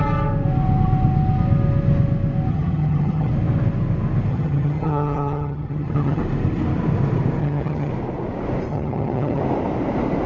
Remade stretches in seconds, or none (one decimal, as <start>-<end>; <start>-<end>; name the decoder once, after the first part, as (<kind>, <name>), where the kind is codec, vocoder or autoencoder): 2.5-3.3 (vocoder, HiFi-GAN); 4.3-6.2; 7.4-7.9; 8.7-9.4